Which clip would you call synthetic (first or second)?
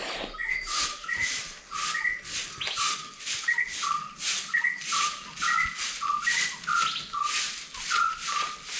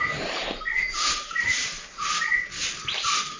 second